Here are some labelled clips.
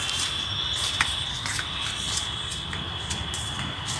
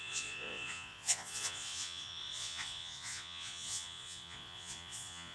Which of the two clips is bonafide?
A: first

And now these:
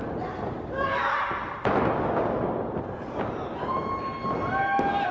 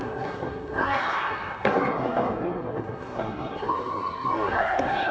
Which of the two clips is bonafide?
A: first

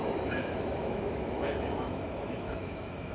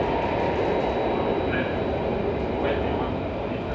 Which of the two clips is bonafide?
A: second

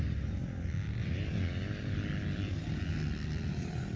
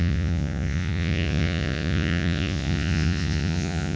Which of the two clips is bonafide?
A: first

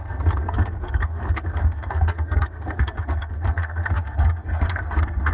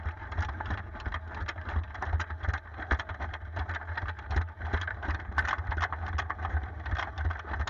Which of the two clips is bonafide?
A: second